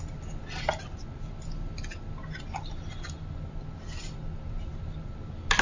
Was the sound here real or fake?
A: real